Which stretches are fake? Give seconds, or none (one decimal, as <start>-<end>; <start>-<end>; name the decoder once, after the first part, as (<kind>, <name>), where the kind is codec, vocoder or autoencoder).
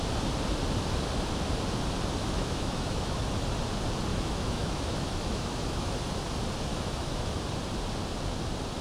2.2-3.2 (autoencoder, DAC-VAE); 4.1-6.0; 6.7-7.3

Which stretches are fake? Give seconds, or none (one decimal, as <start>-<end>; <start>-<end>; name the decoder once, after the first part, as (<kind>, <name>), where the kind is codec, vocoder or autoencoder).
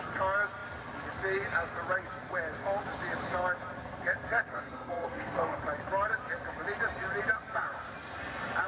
4.5-5.6 (codec, SNAC)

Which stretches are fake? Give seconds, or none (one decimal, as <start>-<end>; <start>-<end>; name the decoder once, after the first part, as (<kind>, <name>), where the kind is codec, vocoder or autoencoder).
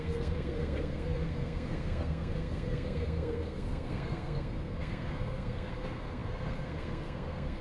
0.0-7.6 (codec, SNAC)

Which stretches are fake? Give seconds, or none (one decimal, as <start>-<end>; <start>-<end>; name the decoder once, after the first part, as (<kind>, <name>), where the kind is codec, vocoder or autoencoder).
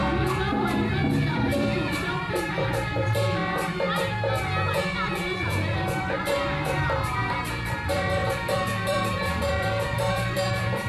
0.0-3.4 (vocoder, BigVGAN v2); 5.4-10.9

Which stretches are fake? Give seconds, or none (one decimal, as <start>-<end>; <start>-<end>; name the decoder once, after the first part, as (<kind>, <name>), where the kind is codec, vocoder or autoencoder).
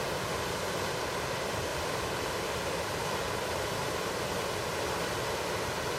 1.7-5.3 (vocoder, BigVGAN v2)